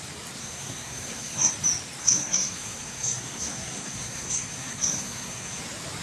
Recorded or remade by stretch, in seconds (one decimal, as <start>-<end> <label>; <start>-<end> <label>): 0.0-0.4 recorded; 0.4-1.5 remade; 1.5-2.0 recorded; 2.0-5.6 remade; 5.6-6.0 recorded